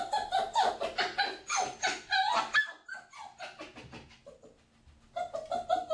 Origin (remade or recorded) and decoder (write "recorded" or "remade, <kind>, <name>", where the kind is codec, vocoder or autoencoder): recorded